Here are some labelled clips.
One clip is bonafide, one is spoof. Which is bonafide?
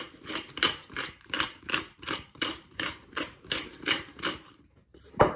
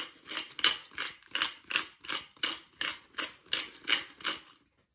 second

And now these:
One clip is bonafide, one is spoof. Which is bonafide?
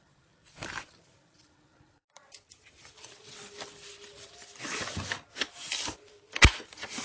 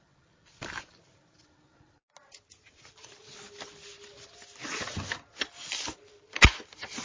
second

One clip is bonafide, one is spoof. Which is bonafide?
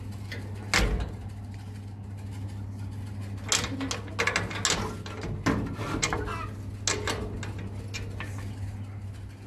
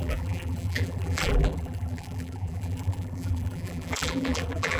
first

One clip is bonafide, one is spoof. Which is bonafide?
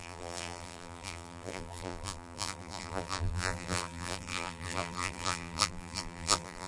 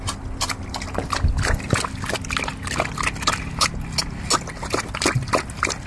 second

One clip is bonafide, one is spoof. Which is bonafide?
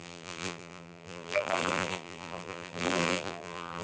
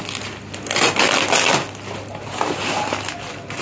second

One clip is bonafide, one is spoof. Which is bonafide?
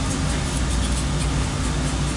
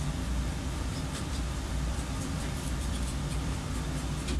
first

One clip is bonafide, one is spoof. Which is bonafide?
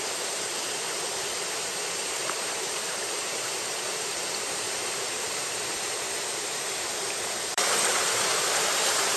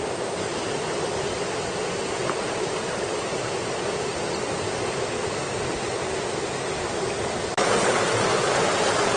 second